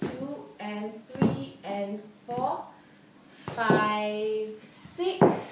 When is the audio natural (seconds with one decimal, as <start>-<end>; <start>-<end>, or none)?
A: 0.0-5.5